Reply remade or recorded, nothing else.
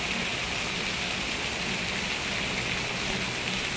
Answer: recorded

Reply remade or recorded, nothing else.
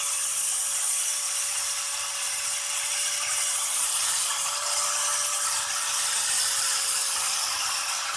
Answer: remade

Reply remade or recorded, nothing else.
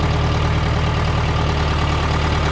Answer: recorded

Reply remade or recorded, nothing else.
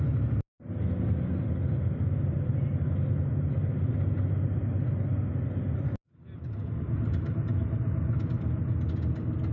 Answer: recorded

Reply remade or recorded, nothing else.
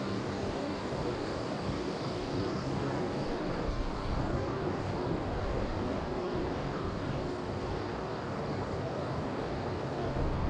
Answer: remade